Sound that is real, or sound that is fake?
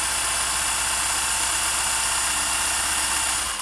real